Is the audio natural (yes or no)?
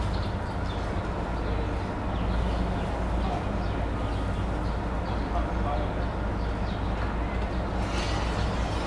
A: yes